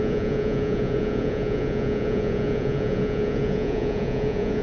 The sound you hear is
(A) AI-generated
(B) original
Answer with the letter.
A